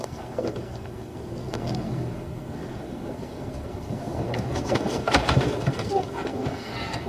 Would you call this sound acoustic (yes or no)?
no